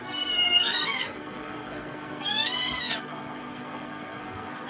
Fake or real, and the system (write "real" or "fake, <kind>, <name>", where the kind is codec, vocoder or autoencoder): fake, codec, SNAC